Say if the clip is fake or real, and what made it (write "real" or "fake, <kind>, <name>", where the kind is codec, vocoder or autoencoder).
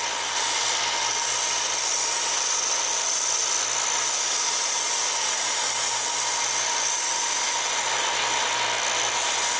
real